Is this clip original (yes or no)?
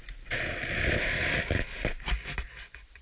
yes